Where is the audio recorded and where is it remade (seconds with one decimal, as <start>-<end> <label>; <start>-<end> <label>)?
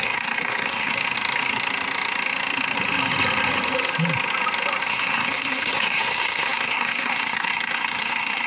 0.0-0.9 remade; 0.9-4.9 recorded; 4.9-8.5 remade